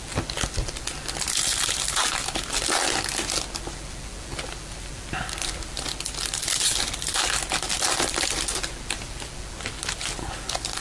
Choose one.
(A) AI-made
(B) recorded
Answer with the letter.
B